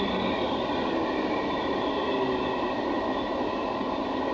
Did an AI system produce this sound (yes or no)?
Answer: no